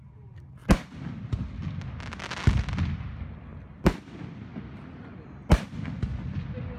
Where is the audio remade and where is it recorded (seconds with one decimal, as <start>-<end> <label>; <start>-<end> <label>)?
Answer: 0.0-6.8 recorded